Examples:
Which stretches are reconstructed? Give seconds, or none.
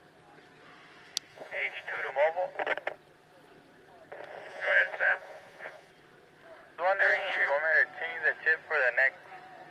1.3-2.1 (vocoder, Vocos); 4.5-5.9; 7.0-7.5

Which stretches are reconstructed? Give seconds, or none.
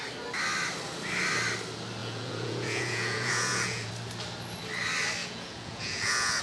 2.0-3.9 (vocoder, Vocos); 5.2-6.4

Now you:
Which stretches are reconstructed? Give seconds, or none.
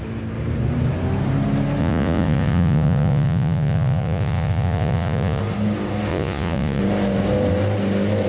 1.8-5.4 (vocoder, Vocos); 6.1-6.8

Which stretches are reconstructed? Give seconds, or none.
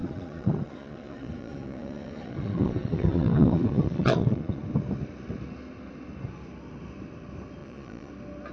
0.0-4.6 (vocoder, Vocos); 7.6-8.1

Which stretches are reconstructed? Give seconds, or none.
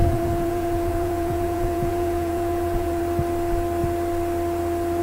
0.0-3.0 (vocoder, Vocos)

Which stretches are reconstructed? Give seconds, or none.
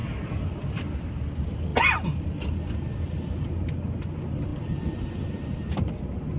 none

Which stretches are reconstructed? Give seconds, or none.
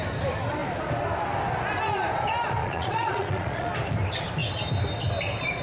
2.6-3.7 (vocoder, Vocos)